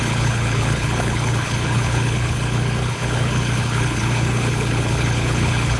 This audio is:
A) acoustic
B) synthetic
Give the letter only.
B